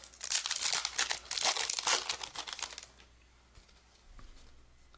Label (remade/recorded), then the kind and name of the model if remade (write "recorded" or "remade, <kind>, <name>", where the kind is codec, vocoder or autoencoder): recorded